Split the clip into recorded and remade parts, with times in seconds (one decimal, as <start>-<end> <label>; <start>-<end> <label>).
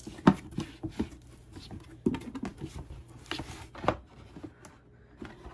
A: 0.0-5.5 recorded